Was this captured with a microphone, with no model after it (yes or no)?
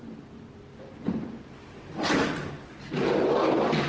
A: yes